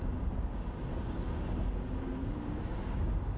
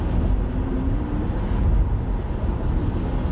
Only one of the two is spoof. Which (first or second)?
first